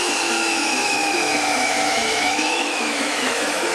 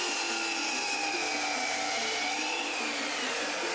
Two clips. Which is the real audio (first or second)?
second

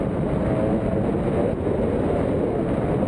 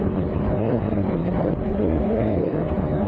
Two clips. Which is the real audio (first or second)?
first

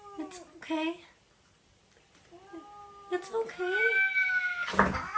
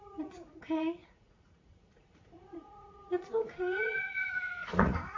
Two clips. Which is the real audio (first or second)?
first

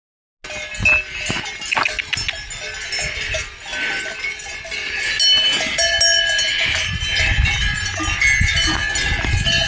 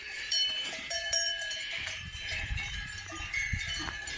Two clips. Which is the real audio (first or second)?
first